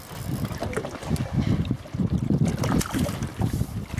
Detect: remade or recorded recorded